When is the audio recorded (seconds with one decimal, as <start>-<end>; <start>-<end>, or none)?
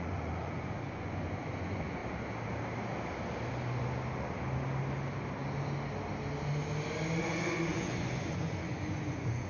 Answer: 2.0-7.2